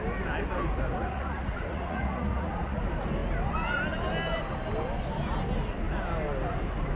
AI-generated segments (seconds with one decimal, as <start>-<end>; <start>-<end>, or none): 1.0-2.8